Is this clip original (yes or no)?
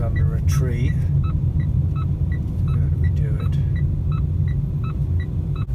yes